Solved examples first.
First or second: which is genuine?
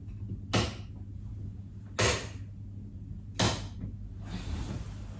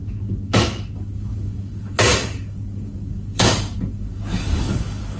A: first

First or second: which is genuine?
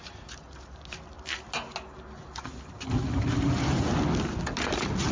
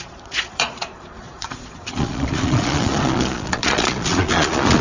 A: first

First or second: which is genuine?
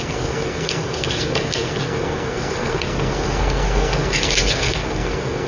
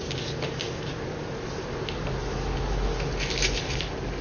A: second